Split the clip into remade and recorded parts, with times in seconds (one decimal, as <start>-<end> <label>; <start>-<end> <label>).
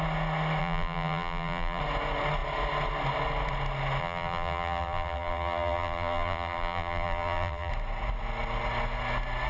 0.0-0.6 recorded; 0.6-1.8 remade; 1.8-4.0 recorded; 4.0-7.7 remade; 7.7-9.5 recorded